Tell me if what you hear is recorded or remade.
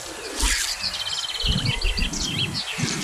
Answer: recorded